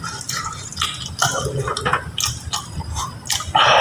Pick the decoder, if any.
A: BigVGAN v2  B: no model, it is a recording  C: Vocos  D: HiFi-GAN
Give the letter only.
B